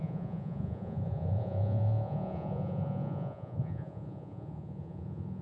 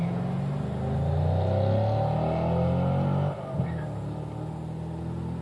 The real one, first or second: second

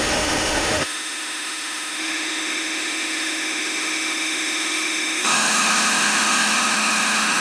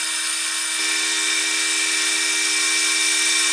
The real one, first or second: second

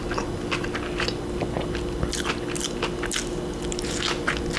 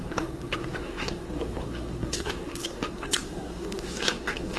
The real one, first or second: first